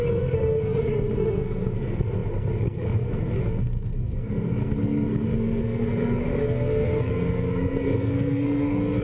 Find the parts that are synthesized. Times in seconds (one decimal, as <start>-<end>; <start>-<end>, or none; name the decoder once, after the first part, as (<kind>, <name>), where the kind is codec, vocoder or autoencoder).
0.0-9.0 (codec, SNAC)